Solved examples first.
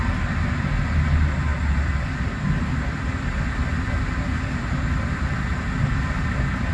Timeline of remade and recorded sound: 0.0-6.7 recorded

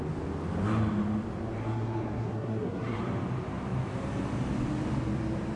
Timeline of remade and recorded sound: 0.0-1.6 recorded; 1.6-3.0 remade; 3.0-5.6 recorded

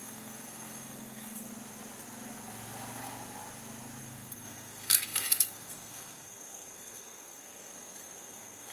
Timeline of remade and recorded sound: 0.0-1.5 remade; 1.5-4.0 recorded; 4.0-8.7 remade

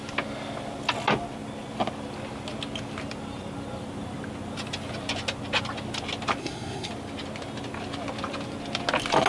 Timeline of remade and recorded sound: 0.0-6.4 recorded; 6.4-6.9 remade; 6.9-9.3 recorded

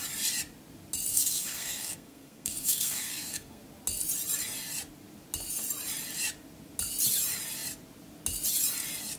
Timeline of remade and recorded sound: 0.0-1.1 recorded; 1.1-3.6 remade; 3.6-9.2 recorded